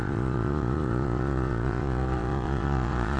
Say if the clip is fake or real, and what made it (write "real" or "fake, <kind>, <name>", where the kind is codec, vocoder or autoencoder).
fake, vocoder, Vocos